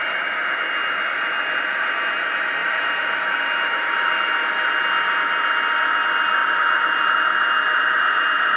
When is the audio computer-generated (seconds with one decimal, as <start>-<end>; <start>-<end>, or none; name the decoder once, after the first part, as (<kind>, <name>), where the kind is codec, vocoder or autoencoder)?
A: 2.6-4.5 (vocoder, BigVGAN v2); 6.4-7.1

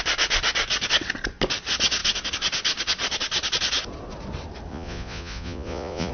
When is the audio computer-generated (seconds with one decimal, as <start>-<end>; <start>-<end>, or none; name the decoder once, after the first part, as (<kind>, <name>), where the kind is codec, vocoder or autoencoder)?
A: 4.7-6.1 (vocoder, Vocos)

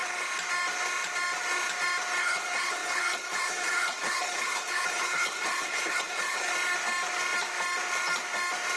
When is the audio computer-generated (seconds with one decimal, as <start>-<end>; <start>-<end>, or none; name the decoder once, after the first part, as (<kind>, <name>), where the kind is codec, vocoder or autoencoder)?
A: 2.2-6.5 (codec, HILCodec)

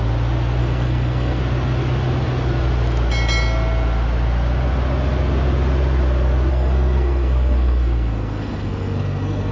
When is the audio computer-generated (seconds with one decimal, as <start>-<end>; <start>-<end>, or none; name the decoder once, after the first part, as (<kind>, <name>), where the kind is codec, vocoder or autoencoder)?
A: 0.6-1.4 (codec, SNAC); 6.5-9.5

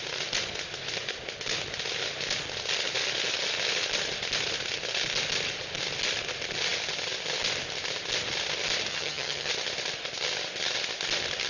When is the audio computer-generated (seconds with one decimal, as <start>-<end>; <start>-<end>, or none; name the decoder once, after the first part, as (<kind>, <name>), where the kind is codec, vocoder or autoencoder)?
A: 8.9-9.5 (vocoder, HiFi-GAN)